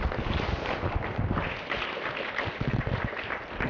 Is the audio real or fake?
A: real